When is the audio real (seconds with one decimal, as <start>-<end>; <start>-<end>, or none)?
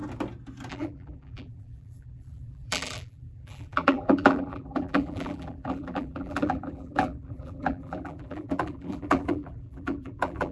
0.0-0.7